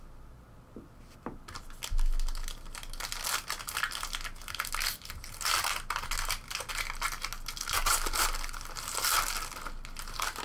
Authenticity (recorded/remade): recorded